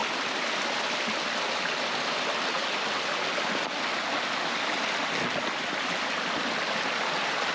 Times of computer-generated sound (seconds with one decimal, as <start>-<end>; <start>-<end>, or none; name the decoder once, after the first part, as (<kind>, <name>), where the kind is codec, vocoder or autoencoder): none